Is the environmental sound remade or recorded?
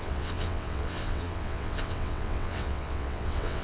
remade